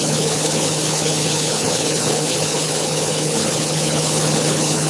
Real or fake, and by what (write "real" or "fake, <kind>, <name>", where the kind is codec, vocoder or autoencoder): fake, codec, HILCodec